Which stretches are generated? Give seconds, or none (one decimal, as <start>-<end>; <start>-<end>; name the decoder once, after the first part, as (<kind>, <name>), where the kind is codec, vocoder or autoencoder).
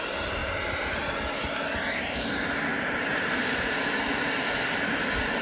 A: 0.4-1.1 (vocoder, BigVGAN v2); 2.7-4.5